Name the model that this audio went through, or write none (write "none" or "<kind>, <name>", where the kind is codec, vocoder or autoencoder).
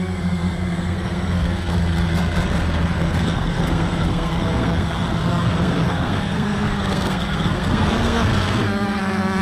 codec, SNAC